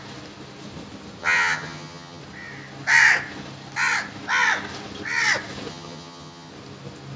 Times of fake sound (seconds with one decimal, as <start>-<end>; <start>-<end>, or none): 1.2-2.2; 5.7-6.5